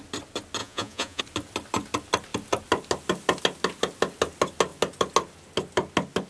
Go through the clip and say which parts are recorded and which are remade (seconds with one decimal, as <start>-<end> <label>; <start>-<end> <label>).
0.0-0.6 recorded; 0.6-1.2 remade; 1.2-6.3 recorded